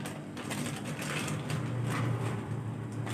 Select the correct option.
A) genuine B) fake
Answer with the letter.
A